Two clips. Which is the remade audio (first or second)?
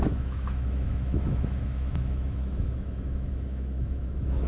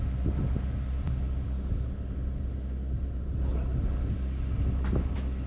first